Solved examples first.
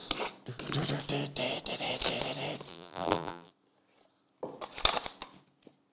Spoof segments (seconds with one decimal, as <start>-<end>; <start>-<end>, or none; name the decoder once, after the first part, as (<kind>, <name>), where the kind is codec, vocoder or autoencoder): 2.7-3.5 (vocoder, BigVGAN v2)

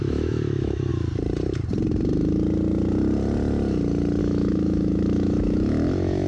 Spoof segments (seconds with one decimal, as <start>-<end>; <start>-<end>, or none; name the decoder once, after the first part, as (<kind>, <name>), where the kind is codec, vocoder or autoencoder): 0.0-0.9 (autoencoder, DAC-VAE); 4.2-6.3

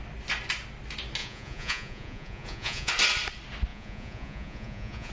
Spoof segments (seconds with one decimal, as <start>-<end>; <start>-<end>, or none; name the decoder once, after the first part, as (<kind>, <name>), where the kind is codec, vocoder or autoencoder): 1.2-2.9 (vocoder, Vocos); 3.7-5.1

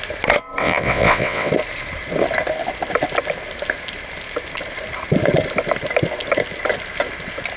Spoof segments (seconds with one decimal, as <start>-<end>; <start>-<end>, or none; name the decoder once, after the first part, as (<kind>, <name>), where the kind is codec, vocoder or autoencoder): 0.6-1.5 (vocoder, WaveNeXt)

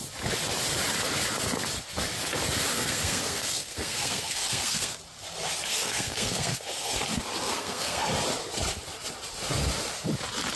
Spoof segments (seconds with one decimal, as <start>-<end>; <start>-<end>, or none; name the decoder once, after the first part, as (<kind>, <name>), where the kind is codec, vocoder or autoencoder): 2.7-5.0 (codec, SNAC); 5.7-7.0; 7.4-8.1